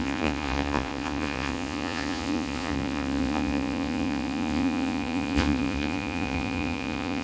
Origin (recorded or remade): remade